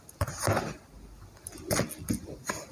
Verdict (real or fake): real